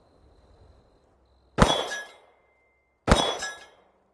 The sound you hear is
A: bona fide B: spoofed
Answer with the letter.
A